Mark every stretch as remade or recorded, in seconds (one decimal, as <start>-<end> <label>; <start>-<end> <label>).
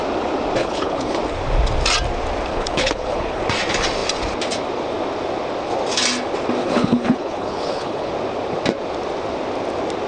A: 0.0-0.6 recorded; 0.6-1.2 remade; 1.2-2.5 recorded; 2.5-3.4 remade; 3.4-6.6 recorded; 6.6-8.1 remade; 8.1-10.1 recorded